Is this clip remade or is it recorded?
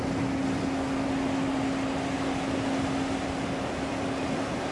recorded